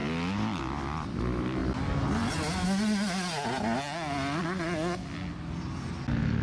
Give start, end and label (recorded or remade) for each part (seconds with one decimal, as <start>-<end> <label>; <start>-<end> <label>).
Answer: 0.0-6.4 recorded